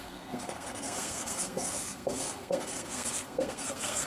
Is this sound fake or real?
fake